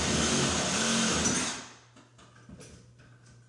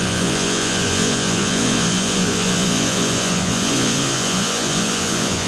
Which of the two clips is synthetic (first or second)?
second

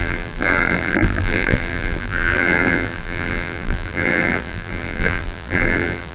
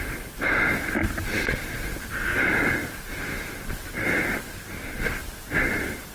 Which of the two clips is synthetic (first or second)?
first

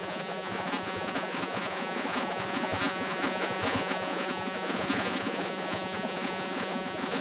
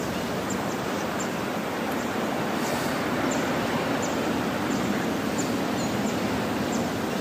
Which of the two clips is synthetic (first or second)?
first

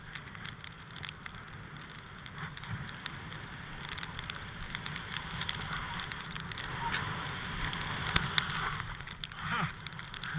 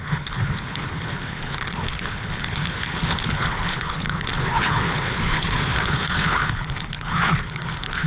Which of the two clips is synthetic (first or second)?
second